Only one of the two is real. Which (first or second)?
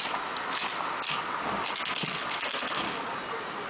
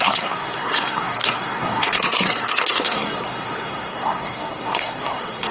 first